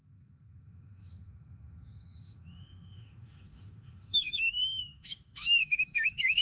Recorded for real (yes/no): no